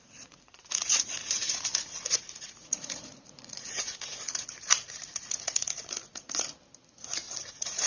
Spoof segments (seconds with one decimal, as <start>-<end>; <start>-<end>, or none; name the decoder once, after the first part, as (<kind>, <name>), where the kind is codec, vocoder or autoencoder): 0.0-6.5 (vocoder, Vocos); 7.4-7.9